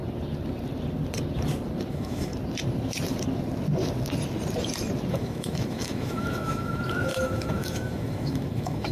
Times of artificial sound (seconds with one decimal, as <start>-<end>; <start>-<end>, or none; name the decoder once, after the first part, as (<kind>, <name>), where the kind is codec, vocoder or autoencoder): 1.9-2.3 (autoencoder, DAC-VAE); 5.1-8.9